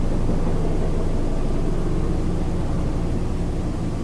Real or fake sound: real